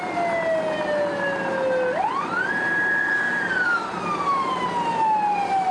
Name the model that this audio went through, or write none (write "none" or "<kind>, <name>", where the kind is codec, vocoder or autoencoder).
none